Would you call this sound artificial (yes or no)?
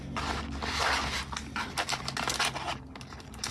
no